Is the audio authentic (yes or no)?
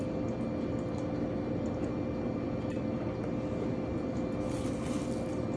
yes